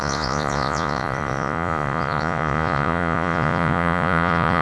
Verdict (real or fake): fake